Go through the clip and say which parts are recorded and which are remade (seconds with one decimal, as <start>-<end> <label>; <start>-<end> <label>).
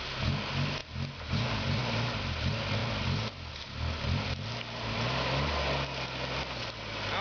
0.0-7.2 recorded